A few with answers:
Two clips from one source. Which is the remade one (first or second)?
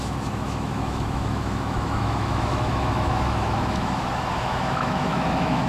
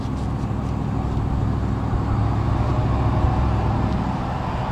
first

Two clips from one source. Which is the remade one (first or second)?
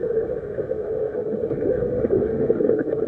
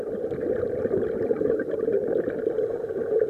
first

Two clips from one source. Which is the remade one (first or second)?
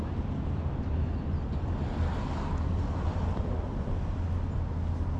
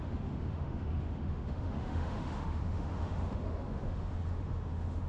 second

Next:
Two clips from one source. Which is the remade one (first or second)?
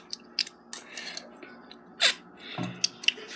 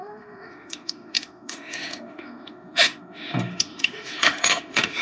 second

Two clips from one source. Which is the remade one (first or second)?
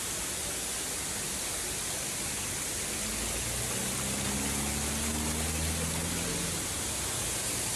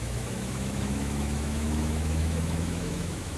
second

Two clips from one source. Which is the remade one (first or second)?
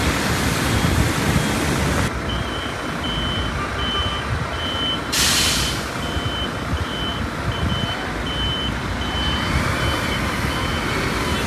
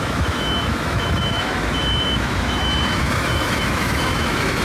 second